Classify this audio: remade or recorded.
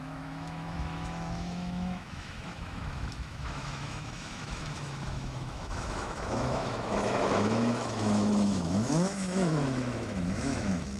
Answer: remade